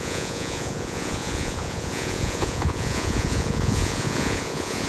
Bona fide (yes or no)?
no